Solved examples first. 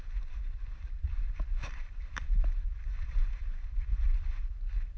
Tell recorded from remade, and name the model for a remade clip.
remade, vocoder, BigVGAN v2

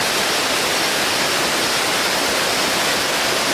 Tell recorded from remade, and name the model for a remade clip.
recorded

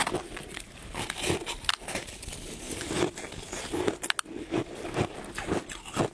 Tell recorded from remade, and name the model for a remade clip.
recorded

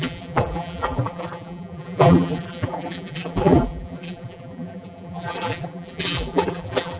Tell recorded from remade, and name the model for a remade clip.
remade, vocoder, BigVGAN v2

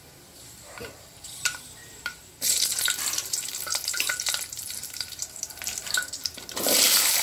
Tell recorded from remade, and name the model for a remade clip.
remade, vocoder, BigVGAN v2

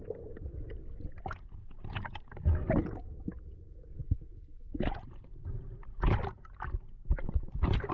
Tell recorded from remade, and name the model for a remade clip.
recorded